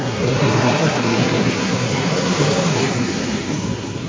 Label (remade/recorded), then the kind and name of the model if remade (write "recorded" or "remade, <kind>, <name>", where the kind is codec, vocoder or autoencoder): remade, codec, SNAC